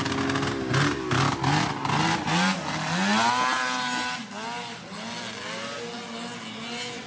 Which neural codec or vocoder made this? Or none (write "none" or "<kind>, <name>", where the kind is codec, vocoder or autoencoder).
none